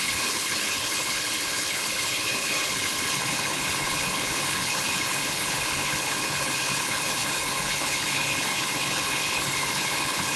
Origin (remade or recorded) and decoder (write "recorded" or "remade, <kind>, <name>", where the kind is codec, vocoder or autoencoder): remade, codec, HILCodec